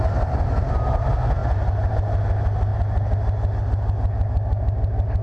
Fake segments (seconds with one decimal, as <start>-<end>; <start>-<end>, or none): none

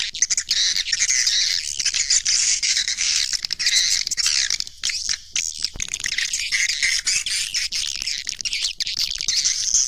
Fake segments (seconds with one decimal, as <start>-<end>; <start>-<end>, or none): 2.4-3.2